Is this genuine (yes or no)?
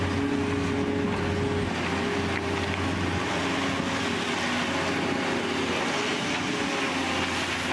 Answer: yes